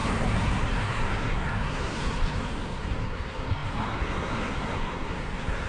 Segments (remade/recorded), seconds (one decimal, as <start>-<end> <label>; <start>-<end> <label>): 0.0-5.7 remade